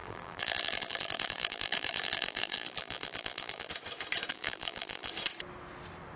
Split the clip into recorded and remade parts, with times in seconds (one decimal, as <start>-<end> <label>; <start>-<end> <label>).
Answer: 0.0-3.7 remade; 3.7-4.3 recorded; 4.3-5.1 remade; 5.1-6.2 recorded